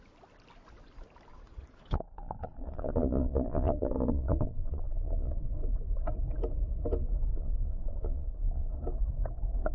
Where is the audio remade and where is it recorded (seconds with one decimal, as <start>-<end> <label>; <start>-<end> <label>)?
0.0-1.3 recorded; 1.3-5.5 remade; 5.5-7.3 recorded; 7.3-8.7 remade; 8.7-9.7 recorded